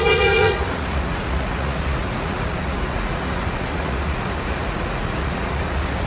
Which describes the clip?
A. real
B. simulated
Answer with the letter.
B